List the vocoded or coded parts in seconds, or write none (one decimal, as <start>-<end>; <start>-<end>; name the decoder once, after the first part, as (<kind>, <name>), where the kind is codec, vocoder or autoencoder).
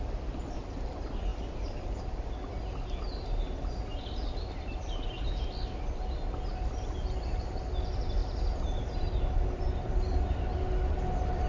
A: none